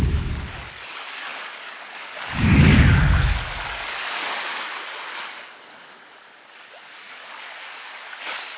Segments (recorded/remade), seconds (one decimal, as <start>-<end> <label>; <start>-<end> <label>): 0.0-4.5 remade; 4.5-5.3 recorded; 5.3-8.6 remade